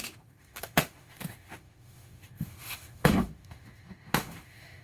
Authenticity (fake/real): fake